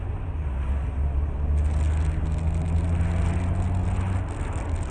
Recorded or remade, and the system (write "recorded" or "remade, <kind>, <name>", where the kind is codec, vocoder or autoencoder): recorded